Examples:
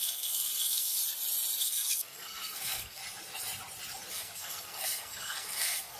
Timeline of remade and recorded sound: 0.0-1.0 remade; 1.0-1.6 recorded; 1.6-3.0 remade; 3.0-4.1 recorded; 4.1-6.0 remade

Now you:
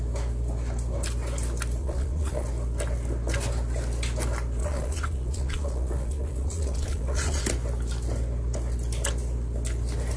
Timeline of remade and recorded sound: 0.0-1.8 recorded; 1.8-2.5 remade; 2.5-4.6 recorded; 4.6-7.4 remade; 7.4-10.2 recorded

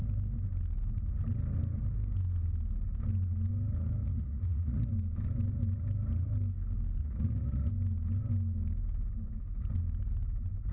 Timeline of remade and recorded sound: 0.0-4.0 recorded; 4.0-4.9 remade; 4.9-7.0 recorded; 7.0-7.7 remade; 7.7-10.7 recorded